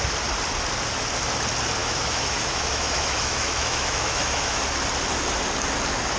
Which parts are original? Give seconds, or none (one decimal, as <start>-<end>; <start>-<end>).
0.0-1.8; 4.6-6.2